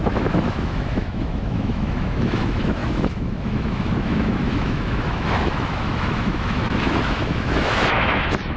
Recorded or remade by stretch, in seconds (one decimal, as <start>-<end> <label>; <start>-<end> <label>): 0.0-8.6 remade